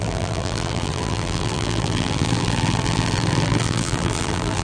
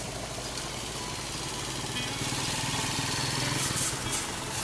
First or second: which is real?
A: second